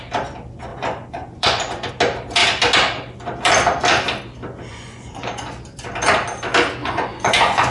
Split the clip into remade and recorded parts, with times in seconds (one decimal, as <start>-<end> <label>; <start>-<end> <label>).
0.0-0.7 recorded; 0.7-1.9 remade; 1.9-4.7 recorded; 4.7-5.5 remade; 5.5-6.8 recorded; 6.8-7.7 remade